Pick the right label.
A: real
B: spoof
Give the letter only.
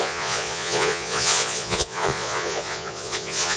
B